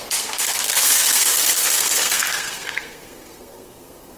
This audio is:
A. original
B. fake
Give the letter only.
B